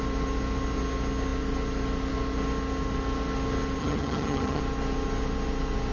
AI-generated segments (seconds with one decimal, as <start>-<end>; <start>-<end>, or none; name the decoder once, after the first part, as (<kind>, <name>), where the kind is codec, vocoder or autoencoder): 3.8-4.6 (vocoder, HiFi-GAN)